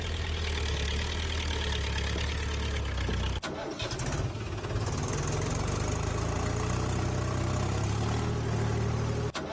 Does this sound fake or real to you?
real